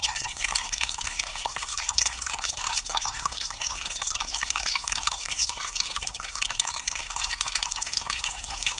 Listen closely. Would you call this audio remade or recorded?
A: remade